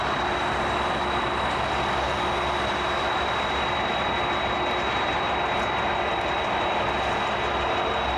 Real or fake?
real